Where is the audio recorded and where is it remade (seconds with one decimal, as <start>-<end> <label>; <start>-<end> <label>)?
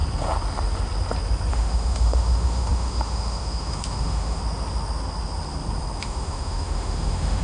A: 0.0-1.5 recorded; 1.5-4.4 remade; 4.4-6.0 recorded; 6.0-7.4 remade